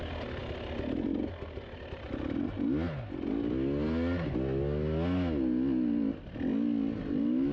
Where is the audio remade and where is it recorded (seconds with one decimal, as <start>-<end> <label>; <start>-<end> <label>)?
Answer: 0.0-7.5 recorded